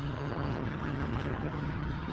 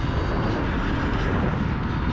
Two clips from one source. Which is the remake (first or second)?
first